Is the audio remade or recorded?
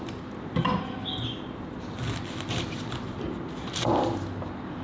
recorded